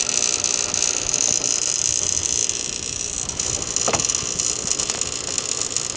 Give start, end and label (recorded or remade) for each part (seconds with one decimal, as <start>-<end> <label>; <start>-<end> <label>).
0.0-6.0 recorded